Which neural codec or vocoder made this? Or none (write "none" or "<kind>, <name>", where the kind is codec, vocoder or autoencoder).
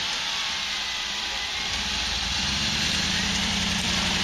vocoder, BigVGAN v2